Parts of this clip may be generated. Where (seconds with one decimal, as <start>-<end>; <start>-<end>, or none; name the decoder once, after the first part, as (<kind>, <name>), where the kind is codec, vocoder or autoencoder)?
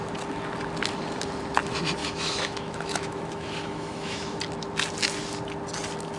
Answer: 2.0-4.4 (autoencoder, DAC-VAE)